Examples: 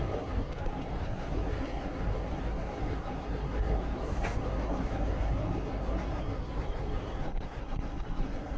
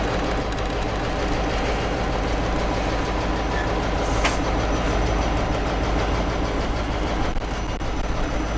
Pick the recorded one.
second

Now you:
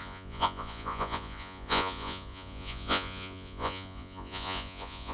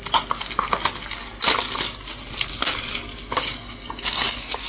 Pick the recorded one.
second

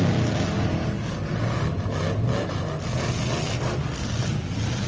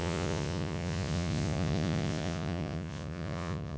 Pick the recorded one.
first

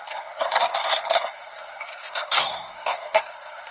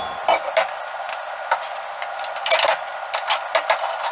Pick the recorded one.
second